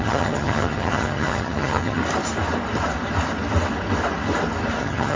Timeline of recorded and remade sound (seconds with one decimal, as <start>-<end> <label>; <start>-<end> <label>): 0.0-2.0 remade; 2.0-4.8 recorded; 4.8-5.2 remade